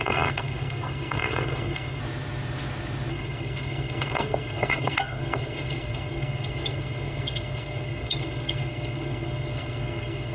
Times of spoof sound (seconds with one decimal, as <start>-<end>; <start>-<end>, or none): 0.0-2.0; 3.1-10.3